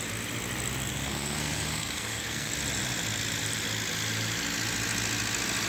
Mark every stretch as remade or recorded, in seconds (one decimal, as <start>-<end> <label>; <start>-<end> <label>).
0.0-0.9 recorded; 0.9-2.5 remade; 2.5-5.7 recorded